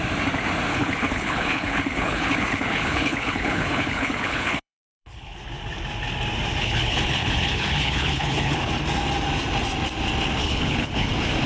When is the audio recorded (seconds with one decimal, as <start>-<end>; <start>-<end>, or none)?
0.0-0.7; 5.4-6.6; 8.7-10.4; 11.1-11.5